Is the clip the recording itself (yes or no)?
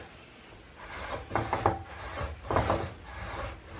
yes